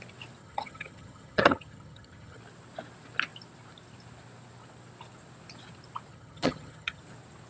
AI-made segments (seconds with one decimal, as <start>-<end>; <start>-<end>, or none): 0.4-2.4; 6.1-7.0

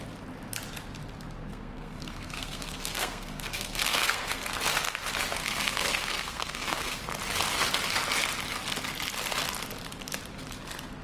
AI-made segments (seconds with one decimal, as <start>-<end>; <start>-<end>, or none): 1.5-4.4; 5.4-7.0

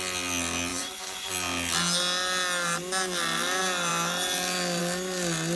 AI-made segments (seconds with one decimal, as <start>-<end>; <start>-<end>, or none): 0.7-1.3

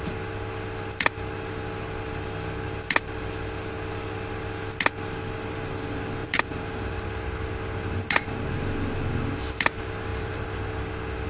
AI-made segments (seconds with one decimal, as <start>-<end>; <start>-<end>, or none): 6.2-7.2; 10.1-10.7